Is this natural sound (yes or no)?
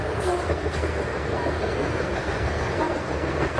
no